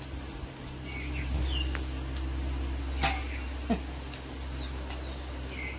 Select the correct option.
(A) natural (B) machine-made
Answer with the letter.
A